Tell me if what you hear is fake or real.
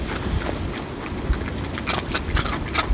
real